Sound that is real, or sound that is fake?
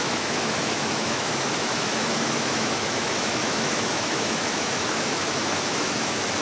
fake